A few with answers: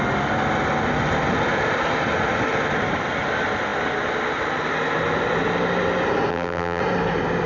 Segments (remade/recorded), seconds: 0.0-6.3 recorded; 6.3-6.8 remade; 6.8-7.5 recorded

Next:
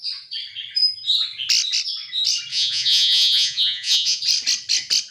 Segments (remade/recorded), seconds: 0.0-2.5 recorded; 2.5-4.2 remade; 4.2-5.1 recorded

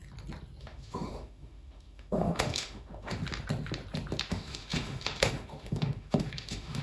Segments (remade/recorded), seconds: 0.0-0.6 recorded; 0.6-3.2 remade; 3.2-4.3 recorded; 4.3-6.8 remade

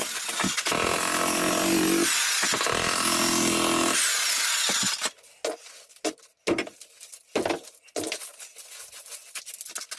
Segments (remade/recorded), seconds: 0.0-10.0 recorded

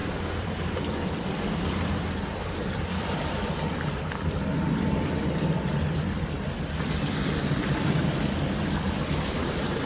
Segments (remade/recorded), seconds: 0.0-9.9 remade

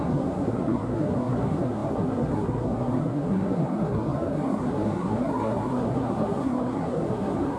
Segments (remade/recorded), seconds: 0.0-7.6 remade

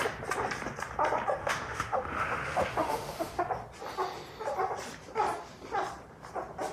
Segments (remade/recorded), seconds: 0.0-1.4 recorded; 1.4-3.4 remade; 3.4-6.7 recorded